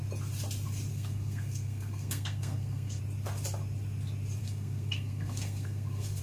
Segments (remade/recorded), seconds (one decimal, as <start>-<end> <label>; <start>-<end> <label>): 0.0-0.9 recorded; 0.9-3.0 remade; 3.0-4.4 recorded; 4.4-6.2 remade